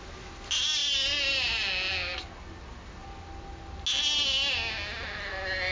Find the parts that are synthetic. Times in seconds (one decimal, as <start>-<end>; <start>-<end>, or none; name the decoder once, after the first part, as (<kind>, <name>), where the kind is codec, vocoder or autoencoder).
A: none

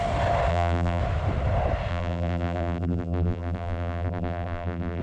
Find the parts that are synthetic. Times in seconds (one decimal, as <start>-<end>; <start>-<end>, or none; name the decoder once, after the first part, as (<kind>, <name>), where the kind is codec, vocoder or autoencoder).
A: 0.5-1.0 (vocoder, BigVGAN v2); 1.9-5.0

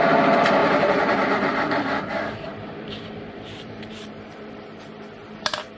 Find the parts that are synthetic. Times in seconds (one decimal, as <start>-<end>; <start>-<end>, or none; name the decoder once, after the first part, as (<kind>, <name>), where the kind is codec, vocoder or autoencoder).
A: 0.6-1.8 (vocoder, BigVGAN v2); 2.5-4.5

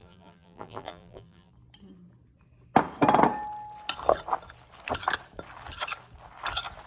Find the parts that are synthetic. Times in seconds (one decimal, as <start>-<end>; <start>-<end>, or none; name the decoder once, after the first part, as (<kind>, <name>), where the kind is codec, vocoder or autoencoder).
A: 0.0-1.5 (vocoder, BigVGAN v2)

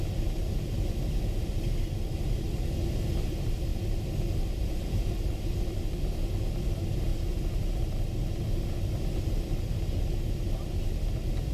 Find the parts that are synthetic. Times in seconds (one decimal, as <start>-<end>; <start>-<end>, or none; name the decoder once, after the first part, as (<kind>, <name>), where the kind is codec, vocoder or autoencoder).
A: none

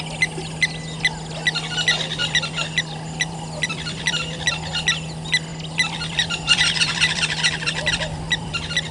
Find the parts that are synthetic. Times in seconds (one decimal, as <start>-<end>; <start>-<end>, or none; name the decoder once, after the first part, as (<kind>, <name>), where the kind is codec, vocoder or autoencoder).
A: 2.2-4.5 (vocoder, BigVGAN v2); 5.5-8.5

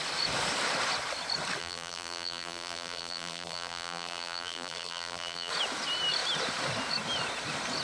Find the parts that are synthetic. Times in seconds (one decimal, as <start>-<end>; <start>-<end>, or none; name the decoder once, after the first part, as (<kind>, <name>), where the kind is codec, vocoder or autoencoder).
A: 1.6-5.5 (vocoder, BigVGAN v2)